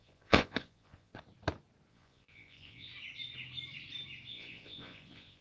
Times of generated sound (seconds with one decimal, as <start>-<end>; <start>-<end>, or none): 0.0-1.1; 1.9-2.9; 4.3-5.4

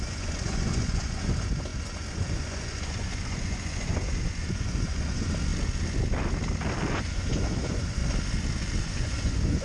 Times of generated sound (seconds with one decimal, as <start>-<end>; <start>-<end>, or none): 0.0-5.5; 6.9-8.0; 8.8-9.6

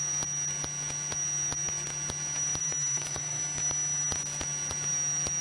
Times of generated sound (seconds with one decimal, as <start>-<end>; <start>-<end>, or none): 2.6-3.4

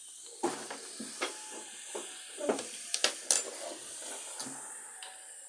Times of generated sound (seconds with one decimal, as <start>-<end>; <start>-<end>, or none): none

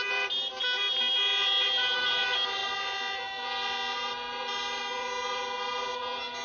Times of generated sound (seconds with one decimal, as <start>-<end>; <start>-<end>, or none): none

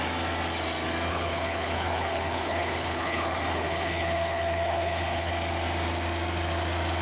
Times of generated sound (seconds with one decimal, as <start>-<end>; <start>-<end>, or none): 1.1-5.3

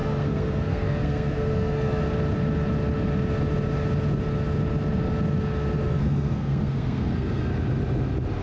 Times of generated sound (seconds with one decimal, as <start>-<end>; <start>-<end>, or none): 0.0-2.0; 5.8-7.5